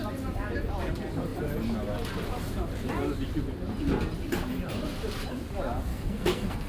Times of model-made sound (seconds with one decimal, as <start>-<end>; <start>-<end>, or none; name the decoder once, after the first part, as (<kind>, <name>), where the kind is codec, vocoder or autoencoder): 5.9-6.7 (codec, SNAC)